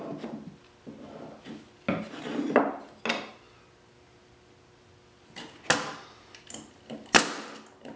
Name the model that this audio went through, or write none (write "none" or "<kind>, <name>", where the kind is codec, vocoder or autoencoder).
none